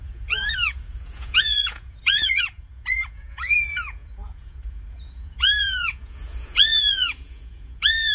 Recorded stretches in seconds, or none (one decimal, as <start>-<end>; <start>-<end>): none